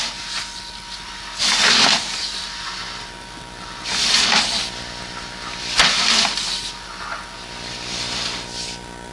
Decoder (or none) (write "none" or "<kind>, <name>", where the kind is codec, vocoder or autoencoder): none